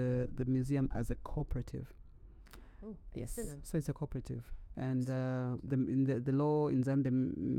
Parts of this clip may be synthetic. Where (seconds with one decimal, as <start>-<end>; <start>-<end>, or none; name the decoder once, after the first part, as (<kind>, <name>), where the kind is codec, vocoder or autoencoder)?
0.0-1.4 (autoencoder, DAC-VAE); 2.4-7.6